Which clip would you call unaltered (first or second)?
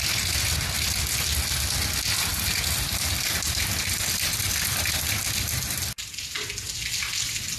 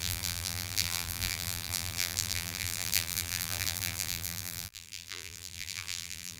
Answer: first